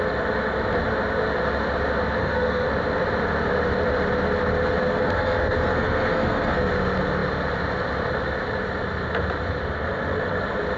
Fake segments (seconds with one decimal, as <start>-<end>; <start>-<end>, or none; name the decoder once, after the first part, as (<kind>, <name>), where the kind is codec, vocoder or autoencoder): 2.2-2.7 (codec, SNAC); 4.8-6.7